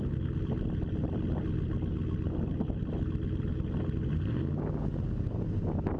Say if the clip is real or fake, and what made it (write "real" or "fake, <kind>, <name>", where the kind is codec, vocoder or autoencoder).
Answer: real